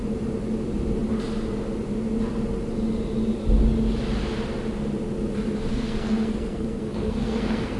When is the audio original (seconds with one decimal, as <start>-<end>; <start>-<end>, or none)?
0.0-5.7